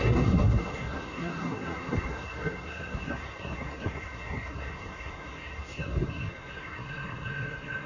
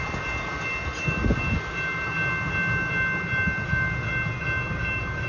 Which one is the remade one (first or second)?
first